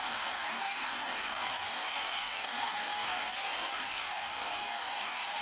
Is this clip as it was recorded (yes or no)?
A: no